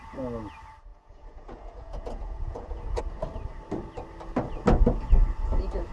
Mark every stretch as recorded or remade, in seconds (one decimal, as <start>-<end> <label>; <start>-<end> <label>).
0.0-0.9 recorded; 0.9-3.0 remade; 3.0-5.9 recorded